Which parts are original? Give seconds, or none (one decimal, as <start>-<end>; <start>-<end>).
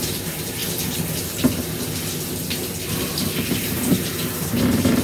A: 0.6-3.5